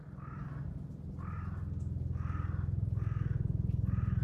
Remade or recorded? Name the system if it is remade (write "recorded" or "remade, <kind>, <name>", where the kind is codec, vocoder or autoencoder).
recorded